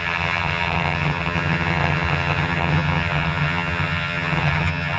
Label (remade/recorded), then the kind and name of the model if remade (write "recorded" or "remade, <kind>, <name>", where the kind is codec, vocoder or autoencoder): remade, vocoder, HiFi-GAN